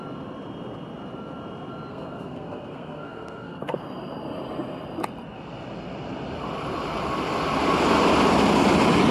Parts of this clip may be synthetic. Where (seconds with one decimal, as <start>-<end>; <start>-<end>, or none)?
1.9-3.8

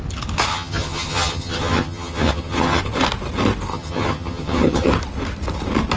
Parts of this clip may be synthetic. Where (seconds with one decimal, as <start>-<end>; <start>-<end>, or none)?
0.5-2.8; 3.7-4.9